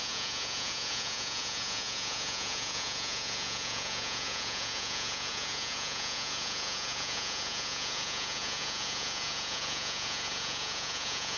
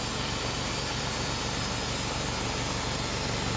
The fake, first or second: first